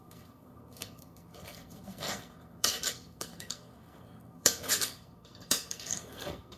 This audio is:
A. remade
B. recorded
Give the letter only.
A